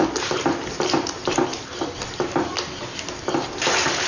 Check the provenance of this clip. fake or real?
real